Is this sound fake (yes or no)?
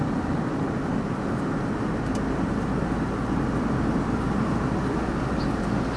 no